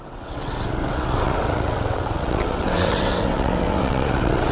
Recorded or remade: remade